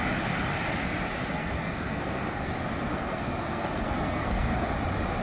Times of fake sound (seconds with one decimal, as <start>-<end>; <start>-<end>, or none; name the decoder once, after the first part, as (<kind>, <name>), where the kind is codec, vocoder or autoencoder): 1.3-2.5 (codec, SNAC); 2.9-4.7